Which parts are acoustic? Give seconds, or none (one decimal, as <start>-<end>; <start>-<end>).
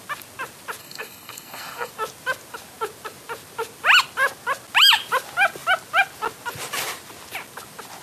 0.0-0.8; 1.9-8.0